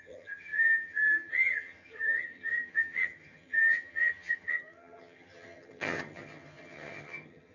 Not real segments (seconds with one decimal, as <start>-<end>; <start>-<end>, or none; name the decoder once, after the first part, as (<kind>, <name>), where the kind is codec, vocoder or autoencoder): 0.0-7.5 (vocoder, HiFi-GAN)